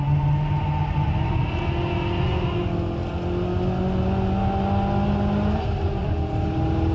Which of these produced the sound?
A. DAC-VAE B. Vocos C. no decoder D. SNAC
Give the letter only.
C